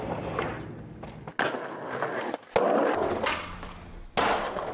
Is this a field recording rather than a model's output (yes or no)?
yes